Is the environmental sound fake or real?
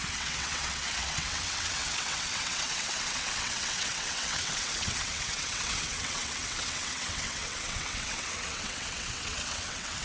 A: fake